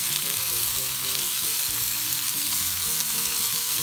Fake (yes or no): yes